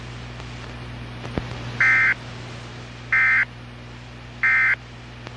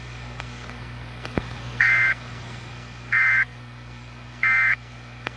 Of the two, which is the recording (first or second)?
first